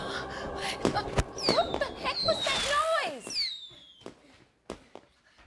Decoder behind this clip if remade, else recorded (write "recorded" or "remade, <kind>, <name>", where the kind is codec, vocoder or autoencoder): recorded